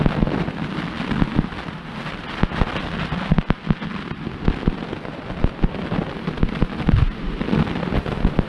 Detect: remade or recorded recorded